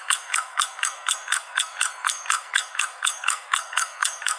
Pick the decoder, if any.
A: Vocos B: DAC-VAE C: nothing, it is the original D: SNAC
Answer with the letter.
D